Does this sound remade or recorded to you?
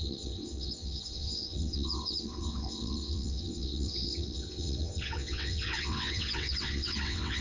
remade